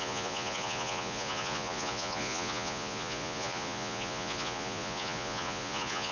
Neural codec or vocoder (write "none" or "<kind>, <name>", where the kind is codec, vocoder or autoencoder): vocoder, Vocos